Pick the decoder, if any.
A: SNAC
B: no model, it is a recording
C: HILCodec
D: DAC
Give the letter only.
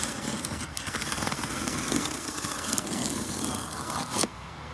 A